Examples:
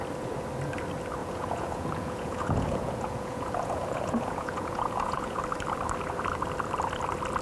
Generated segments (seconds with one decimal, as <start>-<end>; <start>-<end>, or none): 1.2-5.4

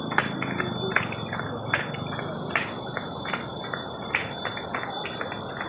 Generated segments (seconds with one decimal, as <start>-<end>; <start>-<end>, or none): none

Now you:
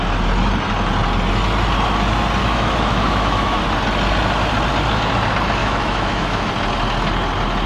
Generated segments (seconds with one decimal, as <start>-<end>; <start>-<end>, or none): 2.4-3.6; 5.6-6.5

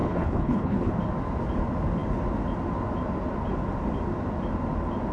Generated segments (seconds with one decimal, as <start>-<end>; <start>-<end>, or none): 0.0-0.9

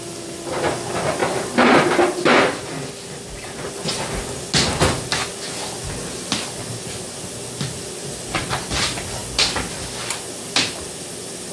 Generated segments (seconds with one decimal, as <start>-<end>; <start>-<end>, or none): none